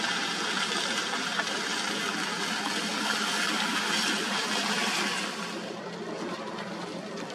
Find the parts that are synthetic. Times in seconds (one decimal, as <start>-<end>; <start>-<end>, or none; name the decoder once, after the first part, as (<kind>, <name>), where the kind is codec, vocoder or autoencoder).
none